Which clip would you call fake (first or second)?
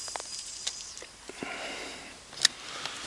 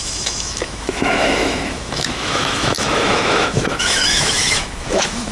second